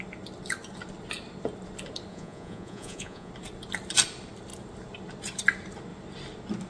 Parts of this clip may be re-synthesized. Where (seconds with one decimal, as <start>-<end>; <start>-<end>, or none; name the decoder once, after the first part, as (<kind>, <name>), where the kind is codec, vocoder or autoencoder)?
2.1-3.3 (vocoder, Vocos)

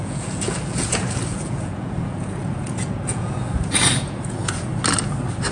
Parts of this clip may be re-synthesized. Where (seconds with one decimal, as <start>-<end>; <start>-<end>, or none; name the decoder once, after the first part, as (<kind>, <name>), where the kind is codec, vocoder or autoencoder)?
0.0-4.7 (vocoder, Vocos)